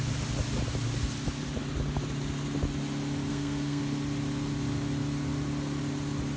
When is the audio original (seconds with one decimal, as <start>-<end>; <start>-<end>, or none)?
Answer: 0.0-3.3; 3.8-6.4